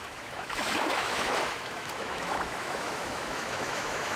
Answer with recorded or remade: remade